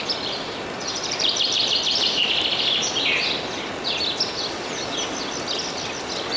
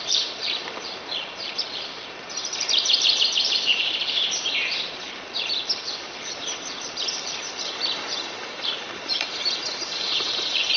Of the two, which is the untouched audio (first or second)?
first